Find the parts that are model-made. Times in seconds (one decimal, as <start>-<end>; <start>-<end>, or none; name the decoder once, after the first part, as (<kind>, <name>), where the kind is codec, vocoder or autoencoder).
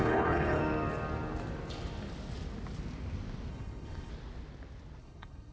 0.0-0.6 (codec, HILCodec); 3.5-4.1; 5.0-5.5